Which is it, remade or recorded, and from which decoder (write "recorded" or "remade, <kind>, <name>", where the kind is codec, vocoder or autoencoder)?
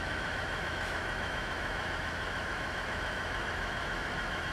remade, autoencoder, DAC-VAE